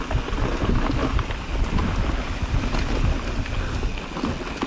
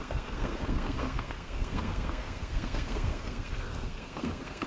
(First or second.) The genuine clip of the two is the first